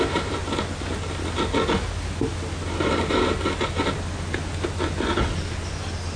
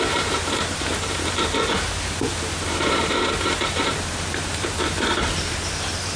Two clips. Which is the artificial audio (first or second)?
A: second